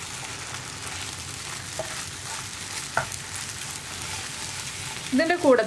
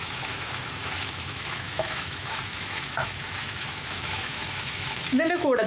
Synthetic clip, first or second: second